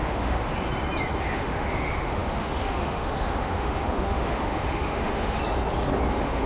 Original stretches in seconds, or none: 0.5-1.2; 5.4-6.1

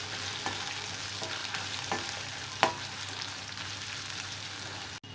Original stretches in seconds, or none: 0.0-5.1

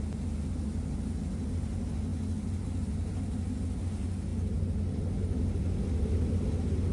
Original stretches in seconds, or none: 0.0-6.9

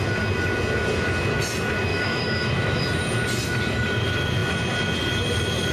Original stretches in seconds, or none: 0.0-1.9; 2.8-5.7

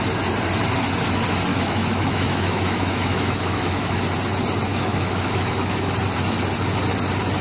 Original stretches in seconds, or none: 0.0-1.5; 4.0-4.7; 5.9-7.4